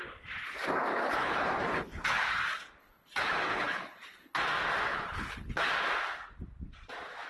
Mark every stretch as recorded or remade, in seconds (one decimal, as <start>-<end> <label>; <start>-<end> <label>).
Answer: 0.0-0.9 recorded; 0.9-2.4 remade; 2.4-2.8 recorded; 2.8-4.4 remade; 4.4-4.9 recorded; 4.9-5.7 remade; 5.7-7.3 recorded

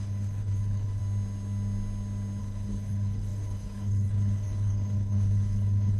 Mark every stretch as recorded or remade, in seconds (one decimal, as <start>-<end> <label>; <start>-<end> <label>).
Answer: 0.0-1.0 remade; 1.0-2.4 recorded; 2.4-6.0 remade

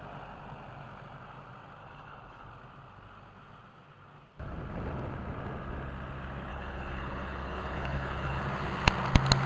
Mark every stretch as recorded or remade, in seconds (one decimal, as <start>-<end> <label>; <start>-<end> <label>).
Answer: 0.0-1.8 recorded; 1.8-2.5 remade; 2.5-6.5 recorded; 6.5-8.4 remade; 8.4-9.5 recorded

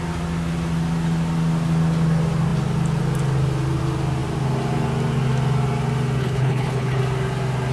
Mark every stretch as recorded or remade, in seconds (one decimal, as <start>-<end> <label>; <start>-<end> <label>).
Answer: 0.0-6.2 recorded; 6.2-7.0 remade; 7.0-7.7 recorded

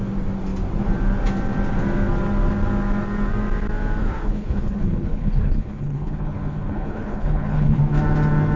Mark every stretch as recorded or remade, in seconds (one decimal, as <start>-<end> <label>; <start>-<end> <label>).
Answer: 0.0-4.0 recorded; 4.0-7.8 remade; 7.8-8.6 recorded

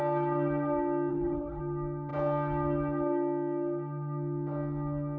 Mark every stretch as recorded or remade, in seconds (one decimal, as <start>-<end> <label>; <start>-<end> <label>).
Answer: 0.0-1.1 recorded; 1.1-1.6 remade; 1.6-5.2 recorded

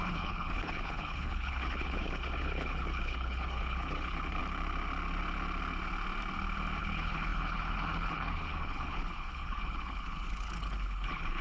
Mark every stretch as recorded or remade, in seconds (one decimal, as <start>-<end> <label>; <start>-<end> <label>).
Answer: 0.0-4.4 remade; 4.4-6.8 recorded; 6.8-11.4 remade

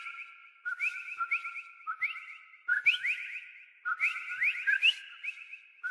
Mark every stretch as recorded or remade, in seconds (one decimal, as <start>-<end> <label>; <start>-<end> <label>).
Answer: 0.0-5.9 recorded